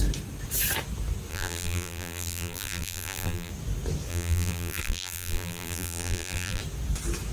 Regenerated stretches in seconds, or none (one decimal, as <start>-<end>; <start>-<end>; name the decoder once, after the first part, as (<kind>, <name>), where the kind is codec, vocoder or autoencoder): 1.3-3.5 (vocoder, BigVGAN v2); 4.1-6.6